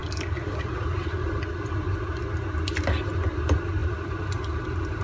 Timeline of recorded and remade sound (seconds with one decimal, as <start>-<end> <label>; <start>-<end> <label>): 0.0-1.3 remade; 1.3-3.8 recorded; 3.8-5.0 remade